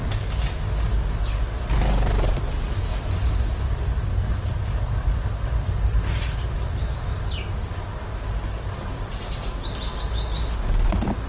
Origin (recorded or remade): recorded